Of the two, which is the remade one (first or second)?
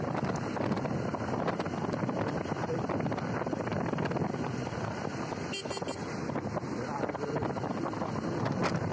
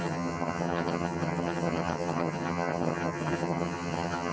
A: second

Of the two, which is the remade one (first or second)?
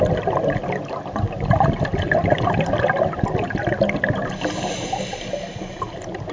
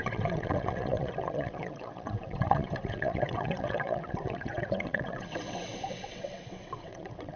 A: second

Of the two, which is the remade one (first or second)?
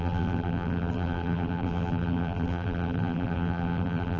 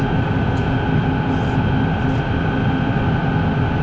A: first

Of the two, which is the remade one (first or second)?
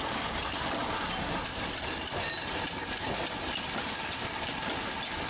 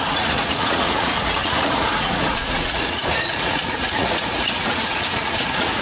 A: second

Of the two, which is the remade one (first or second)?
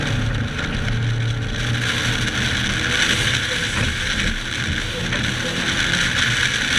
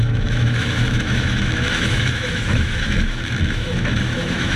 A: second